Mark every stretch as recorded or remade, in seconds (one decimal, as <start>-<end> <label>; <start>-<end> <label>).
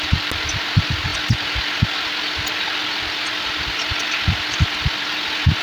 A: 0.0-5.6 recorded